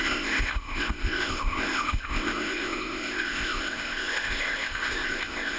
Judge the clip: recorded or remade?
remade